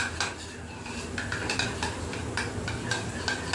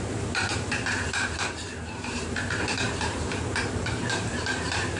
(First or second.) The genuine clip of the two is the first